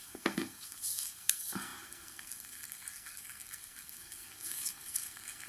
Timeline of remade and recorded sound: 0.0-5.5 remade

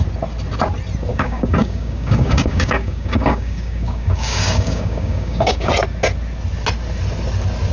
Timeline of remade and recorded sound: 0.0-1.1 recorded; 1.1-5.7 remade; 5.7-7.7 recorded